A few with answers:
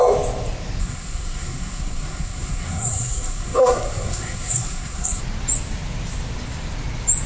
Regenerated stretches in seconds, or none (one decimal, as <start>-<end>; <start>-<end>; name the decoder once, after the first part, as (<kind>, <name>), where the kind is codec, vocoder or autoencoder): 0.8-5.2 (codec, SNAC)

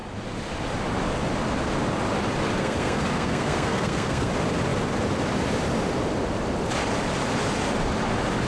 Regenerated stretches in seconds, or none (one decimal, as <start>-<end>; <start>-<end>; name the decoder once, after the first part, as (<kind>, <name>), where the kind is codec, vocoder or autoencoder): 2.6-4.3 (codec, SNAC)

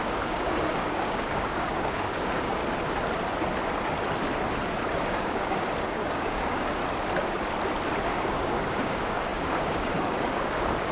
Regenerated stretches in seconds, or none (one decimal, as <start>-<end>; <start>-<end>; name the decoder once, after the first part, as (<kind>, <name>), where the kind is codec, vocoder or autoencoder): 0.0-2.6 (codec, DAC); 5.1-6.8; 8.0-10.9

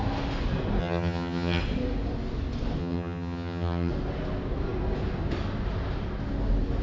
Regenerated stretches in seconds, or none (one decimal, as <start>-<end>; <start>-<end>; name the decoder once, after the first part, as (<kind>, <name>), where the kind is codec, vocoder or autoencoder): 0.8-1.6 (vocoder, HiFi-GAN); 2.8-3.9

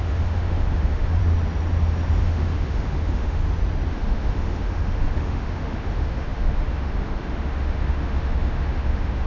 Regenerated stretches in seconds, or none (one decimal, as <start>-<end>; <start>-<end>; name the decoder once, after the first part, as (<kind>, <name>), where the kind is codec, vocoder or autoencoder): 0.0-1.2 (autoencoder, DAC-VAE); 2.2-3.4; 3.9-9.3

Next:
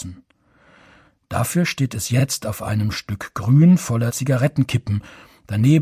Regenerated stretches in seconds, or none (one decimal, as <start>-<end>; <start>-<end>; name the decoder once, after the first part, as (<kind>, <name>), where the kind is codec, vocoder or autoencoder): none

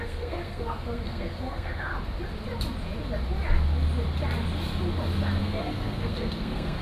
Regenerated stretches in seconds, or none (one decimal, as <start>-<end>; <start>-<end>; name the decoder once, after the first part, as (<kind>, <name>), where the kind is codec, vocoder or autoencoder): 0.0-1.9 (codec, SNAC); 5.4-6.8

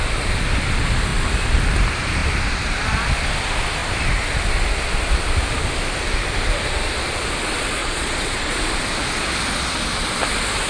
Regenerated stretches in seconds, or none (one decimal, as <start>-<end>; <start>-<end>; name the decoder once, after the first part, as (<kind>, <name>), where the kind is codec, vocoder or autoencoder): 7.8-8.5 (vocoder, Vocos)